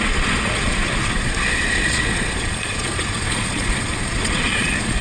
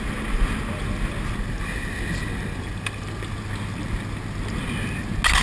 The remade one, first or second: first